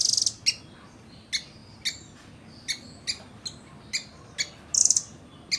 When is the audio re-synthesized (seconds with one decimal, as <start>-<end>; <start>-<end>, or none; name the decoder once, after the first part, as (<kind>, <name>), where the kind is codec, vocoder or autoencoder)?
none

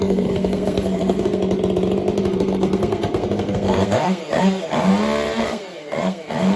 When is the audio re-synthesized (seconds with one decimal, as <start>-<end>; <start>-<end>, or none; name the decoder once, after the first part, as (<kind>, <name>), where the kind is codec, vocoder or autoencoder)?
0.0-1.4 (codec, SNAC); 2.2-4.9; 5.4-6.6

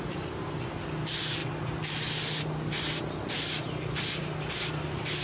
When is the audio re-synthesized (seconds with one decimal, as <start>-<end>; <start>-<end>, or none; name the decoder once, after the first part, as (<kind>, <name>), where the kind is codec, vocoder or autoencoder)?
none

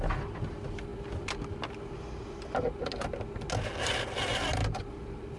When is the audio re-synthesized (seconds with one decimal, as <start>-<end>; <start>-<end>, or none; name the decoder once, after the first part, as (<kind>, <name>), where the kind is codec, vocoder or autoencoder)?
none

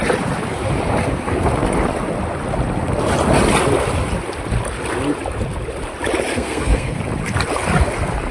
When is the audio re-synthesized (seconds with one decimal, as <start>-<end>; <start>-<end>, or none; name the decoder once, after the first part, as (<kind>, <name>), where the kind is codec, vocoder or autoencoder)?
6.3-7.0 (codec, SNAC)